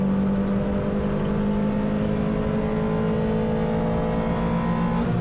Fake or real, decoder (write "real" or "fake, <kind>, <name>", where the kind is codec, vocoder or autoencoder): real